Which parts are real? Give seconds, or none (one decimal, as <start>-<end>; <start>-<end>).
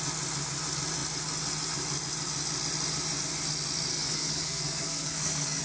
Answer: 0.0-3.9